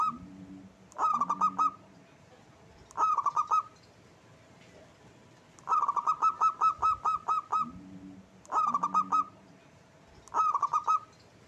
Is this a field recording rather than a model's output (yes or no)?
yes